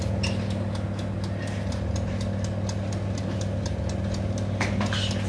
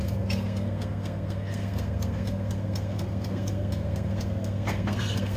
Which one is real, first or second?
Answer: first